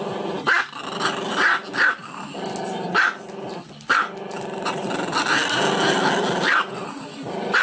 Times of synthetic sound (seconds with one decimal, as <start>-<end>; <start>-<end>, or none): none